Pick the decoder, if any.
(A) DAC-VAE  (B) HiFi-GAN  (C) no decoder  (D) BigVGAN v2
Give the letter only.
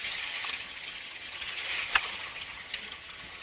B